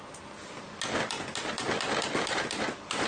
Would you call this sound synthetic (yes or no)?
no